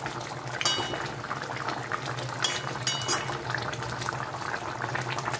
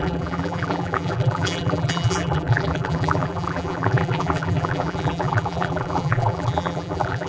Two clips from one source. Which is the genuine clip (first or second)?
first